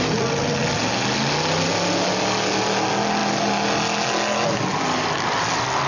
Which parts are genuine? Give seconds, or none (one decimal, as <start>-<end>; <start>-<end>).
0.0-5.9